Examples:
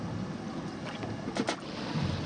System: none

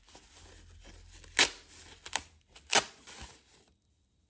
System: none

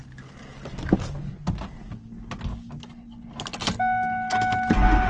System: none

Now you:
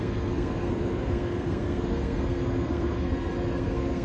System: codec, SNAC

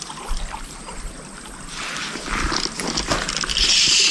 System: none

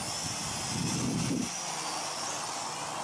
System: none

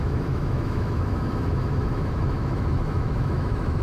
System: autoencoder, DAC-VAE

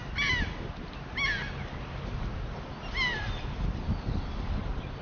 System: none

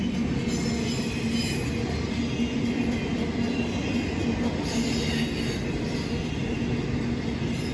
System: none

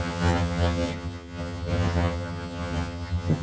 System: vocoder, HiFi-GAN